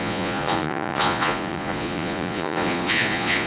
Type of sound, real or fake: fake